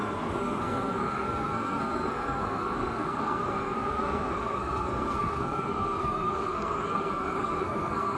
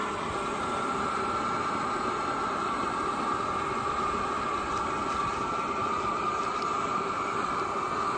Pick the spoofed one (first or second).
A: first